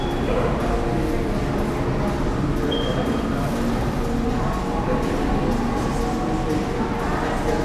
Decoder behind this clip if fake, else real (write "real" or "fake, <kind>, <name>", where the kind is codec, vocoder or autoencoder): real